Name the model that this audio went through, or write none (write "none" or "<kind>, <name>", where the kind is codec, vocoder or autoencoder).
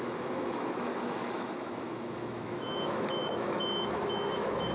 autoencoder, DAC-VAE